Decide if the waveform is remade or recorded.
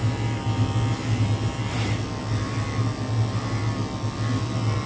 recorded